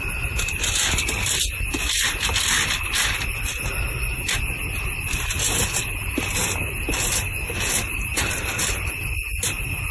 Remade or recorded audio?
recorded